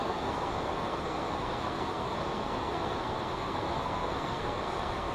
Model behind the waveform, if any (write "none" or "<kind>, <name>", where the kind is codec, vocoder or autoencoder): codec, SNAC